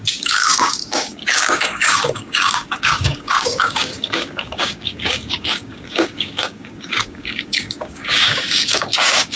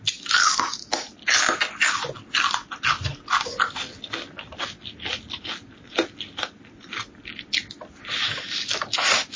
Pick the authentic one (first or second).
second